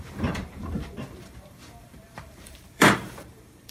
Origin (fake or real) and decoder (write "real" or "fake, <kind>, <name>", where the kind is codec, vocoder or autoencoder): fake, vocoder, BigVGAN v2